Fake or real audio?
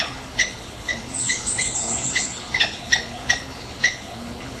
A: fake